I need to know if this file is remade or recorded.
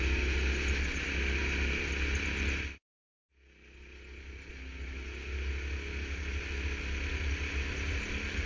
recorded